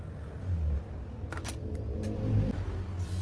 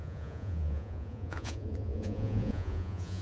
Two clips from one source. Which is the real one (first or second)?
first